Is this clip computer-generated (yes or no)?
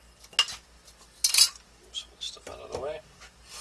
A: no